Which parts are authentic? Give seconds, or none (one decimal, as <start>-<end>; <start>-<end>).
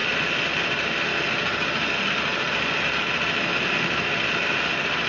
0.0-5.1